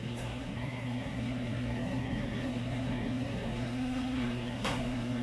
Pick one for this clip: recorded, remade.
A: remade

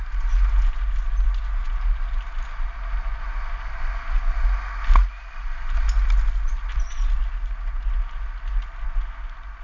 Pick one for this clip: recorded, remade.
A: recorded